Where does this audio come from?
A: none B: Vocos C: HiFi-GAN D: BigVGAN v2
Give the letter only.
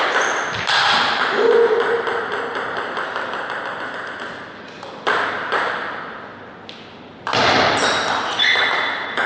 A